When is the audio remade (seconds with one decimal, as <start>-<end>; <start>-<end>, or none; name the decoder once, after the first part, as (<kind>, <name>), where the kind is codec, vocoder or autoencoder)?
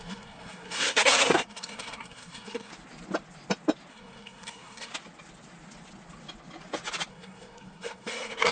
0.0-2.7 (codec, SNAC); 3.9-4.9; 7.1-8.5